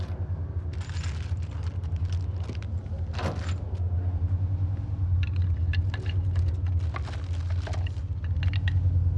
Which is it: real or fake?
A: real